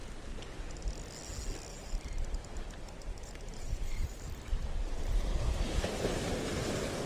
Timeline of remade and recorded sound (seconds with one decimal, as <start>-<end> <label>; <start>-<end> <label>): 0.0-0.5 remade; 0.5-1.7 recorded; 1.7-6.0 remade; 6.0-7.1 recorded

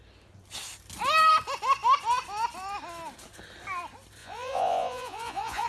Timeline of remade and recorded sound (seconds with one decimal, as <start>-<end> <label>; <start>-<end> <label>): 0.0-4.2 recorded; 4.2-5.7 remade

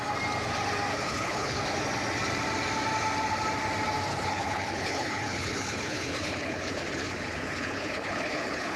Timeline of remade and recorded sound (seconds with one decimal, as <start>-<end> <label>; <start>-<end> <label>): 0.0-0.9 recorded; 0.9-1.6 remade; 1.6-4.1 recorded; 4.1-8.8 remade

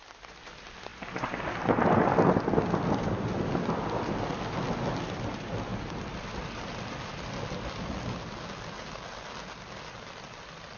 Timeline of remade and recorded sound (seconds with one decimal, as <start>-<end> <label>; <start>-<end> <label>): 0.0-10.8 recorded

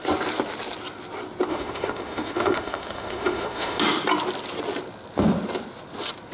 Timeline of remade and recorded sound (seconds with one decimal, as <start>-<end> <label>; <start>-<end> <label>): 0.0-1.5 recorded; 1.5-3.8 remade; 3.8-6.3 recorded

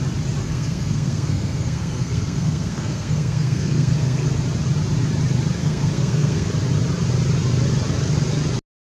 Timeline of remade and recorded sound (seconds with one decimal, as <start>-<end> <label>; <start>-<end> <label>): 0.0-0.4 recorded; 0.4-4.4 remade; 4.4-5.6 recorded; 5.6-6.5 remade; 6.5-8.8 recorded

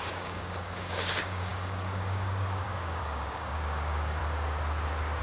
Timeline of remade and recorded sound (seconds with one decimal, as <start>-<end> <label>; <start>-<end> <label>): 0.0-4.2 remade; 4.2-5.2 recorded

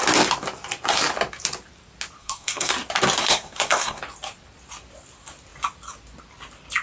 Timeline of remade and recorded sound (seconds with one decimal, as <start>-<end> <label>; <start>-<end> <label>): 0.0-2.2 recorded; 2.2-2.7 remade; 2.7-3.2 recorded; 3.2-4.0 remade; 4.0-6.8 recorded